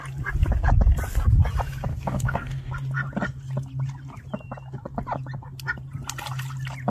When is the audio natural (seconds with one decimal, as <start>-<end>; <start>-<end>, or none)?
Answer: 0.0-1.9; 2.7-6.9